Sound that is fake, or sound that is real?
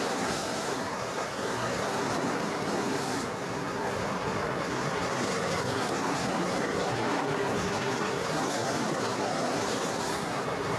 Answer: fake